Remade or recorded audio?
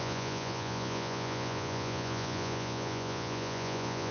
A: remade